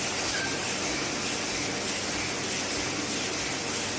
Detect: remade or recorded recorded